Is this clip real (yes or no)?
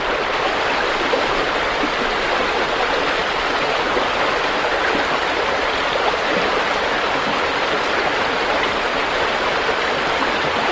yes